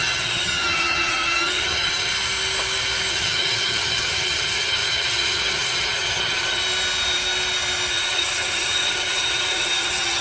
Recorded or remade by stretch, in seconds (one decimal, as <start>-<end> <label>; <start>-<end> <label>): 0.0-2.1 remade; 2.1-3.1 recorded; 3.1-6.6 remade; 6.6-7.9 recorded; 7.9-10.2 remade